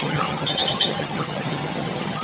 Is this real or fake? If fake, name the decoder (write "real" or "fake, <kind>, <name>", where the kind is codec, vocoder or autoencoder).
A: fake, vocoder, HiFi-GAN